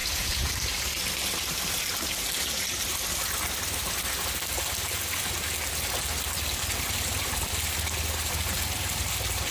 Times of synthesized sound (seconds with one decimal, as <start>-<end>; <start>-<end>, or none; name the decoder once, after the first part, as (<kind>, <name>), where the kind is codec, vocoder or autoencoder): 0.0-0.5 (vocoder, Vocos)